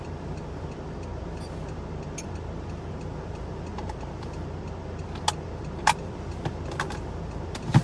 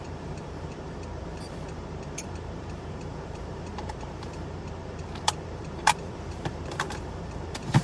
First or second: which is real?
first